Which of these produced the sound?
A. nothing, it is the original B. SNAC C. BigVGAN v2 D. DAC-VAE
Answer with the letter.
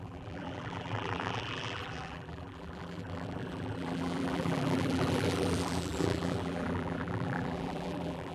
C